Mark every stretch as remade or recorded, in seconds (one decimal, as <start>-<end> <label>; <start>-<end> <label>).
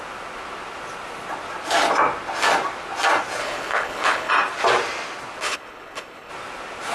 0.0-3.4 recorded; 3.4-4.3 remade; 4.3-5.4 recorded; 5.4-6.3 remade; 6.3-6.9 recorded